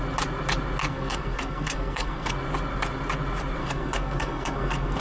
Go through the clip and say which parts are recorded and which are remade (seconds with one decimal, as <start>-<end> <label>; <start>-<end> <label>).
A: 0.0-0.8 recorded; 0.8-2.3 remade; 2.3-3.6 recorded; 3.6-5.0 remade